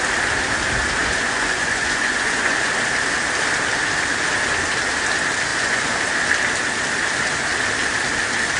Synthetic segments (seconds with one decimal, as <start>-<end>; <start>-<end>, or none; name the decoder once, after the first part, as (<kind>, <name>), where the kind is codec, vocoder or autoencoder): 1.0-2.7 (vocoder, Vocos); 5.5-6.0